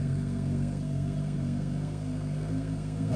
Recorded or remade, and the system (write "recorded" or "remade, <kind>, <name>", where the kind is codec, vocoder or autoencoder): remade, codec, SNAC